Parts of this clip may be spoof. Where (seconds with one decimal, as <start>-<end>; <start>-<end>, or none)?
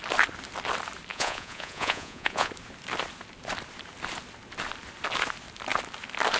1.1-2.5